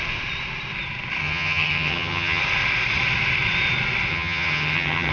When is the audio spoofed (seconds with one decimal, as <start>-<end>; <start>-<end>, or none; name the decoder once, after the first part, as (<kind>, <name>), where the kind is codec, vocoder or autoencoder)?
1.2-2.4 (vocoder, HiFi-GAN); 4.1-5.1